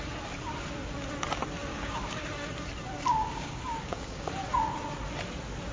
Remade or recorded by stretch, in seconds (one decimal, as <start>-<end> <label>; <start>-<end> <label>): 0.0-1.7 recorded; 1.7-2.3 remade; 2.3-3.1 recorded; 3.1-4.3 remade; 4.3-5.7 recorded